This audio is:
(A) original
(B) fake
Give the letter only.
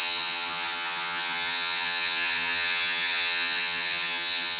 B